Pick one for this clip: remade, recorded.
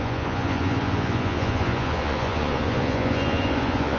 remade